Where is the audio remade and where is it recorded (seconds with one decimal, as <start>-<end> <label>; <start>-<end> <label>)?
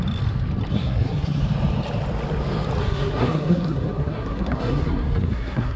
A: 0.0-0.7 recorded; 0.7-1.4 remade; 1.4-2.8 recorded; 2.8-5.8 remade